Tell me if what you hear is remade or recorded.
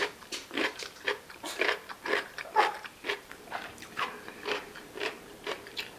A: remade